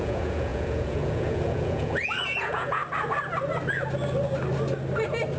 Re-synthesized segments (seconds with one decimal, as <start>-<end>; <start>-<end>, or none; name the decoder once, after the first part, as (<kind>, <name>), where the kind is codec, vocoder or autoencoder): 0.0-2.8 (vocoder, Vocos)